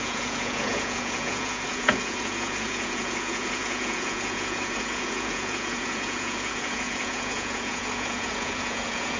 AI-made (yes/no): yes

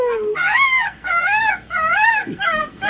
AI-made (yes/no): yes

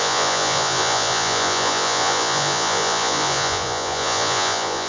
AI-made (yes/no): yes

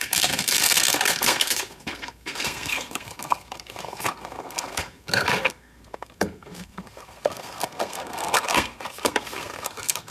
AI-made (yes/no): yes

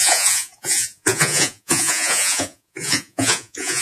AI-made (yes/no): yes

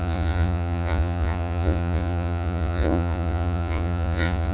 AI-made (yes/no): yes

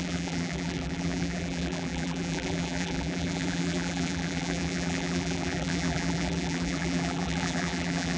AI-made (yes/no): yes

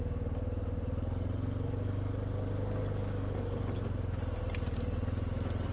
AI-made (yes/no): no